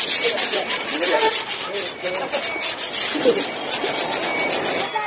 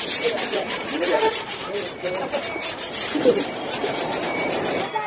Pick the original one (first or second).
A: first